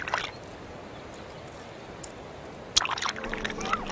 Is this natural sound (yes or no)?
yes